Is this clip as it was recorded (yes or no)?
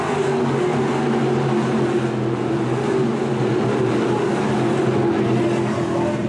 yes